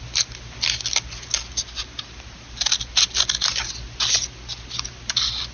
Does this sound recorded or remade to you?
recorded